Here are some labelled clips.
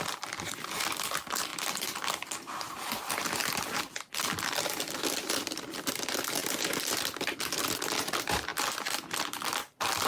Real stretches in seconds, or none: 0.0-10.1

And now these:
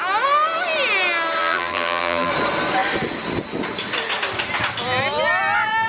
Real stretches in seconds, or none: 0.0-1.4; 2.3-5.9

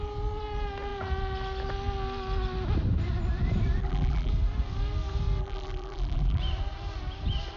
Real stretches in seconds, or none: 0.0-3.8; 4.3-5.4; 6.4-7.6

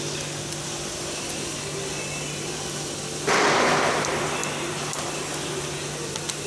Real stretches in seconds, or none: 0.0-6.5

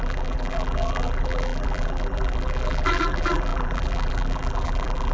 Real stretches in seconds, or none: none

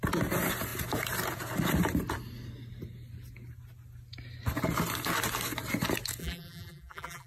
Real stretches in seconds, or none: 0.0-6.2

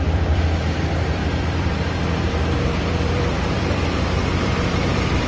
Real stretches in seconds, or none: none

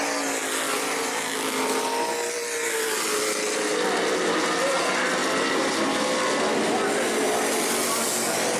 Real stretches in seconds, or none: 0.0-0.7; 1.6-8.6